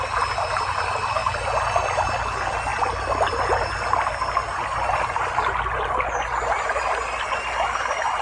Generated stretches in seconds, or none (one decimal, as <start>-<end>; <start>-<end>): none